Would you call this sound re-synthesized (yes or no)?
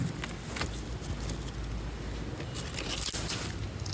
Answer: no